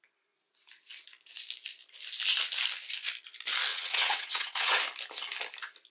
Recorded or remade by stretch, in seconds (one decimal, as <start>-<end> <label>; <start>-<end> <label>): 0.0-3.7 recorded; 3.7-4.8 remade; 4.8-5.9 recorded